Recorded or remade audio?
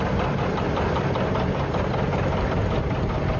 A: recorded